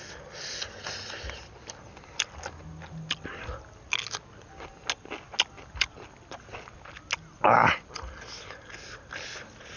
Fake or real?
real